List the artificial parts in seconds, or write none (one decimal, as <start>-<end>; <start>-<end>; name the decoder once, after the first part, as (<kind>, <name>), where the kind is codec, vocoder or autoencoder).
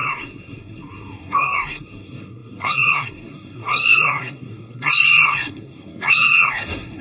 0.0-7.0 (codec, SNAC)